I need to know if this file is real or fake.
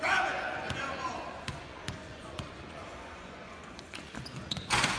fake